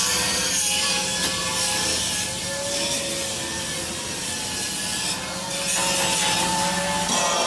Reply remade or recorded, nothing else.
recorded